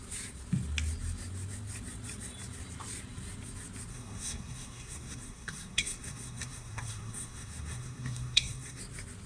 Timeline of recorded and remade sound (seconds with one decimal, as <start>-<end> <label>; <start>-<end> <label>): 0.0-3.9 recorded; 3.9-8.8 remade; 8.8-9.3 recorded